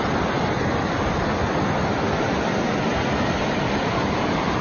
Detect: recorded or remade recorded